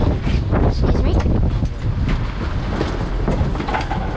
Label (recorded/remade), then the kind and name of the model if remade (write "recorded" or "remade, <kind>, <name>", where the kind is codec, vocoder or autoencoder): recorded